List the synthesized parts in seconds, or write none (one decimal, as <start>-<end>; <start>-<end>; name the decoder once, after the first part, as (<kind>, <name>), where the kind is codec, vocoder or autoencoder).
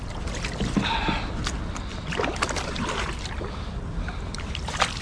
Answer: none